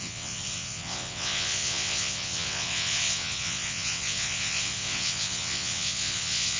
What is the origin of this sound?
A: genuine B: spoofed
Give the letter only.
B